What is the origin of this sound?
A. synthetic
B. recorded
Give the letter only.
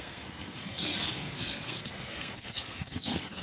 A